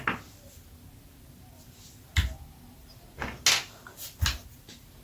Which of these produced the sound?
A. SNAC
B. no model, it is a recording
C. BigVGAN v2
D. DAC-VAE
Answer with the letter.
B